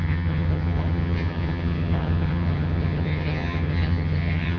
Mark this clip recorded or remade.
remade